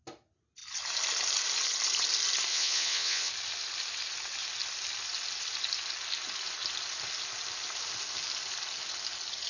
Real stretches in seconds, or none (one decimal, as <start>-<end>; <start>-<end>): 0.0-2.5; 3.3-9.5